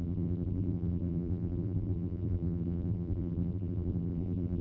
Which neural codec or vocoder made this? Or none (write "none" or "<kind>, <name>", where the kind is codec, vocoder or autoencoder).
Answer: vocoder, BigVGAN v2